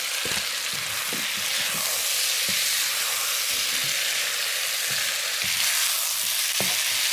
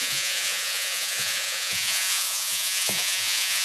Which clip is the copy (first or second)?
second